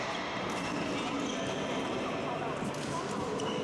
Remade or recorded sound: recorded